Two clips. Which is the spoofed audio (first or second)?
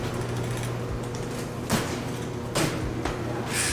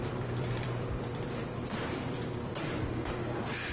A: second